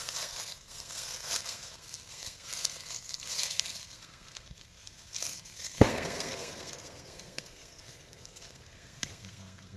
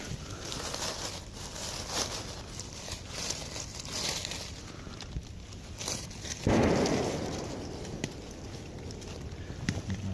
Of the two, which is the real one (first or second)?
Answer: second